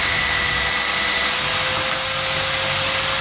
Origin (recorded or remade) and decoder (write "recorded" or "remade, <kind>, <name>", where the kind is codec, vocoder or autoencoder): recorded